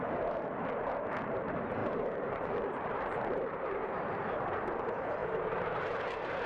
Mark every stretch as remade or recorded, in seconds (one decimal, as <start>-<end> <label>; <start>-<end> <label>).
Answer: 0.0-6.5 remade